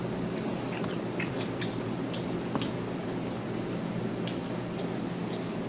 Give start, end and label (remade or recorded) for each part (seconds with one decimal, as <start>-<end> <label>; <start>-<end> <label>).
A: 0.0-5.7 recorded